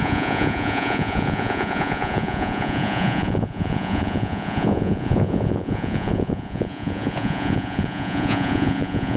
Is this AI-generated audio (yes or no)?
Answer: yes